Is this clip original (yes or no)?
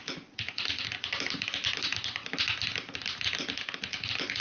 yes